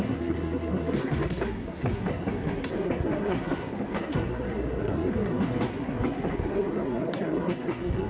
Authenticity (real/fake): fake